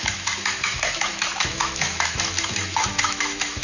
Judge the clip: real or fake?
fake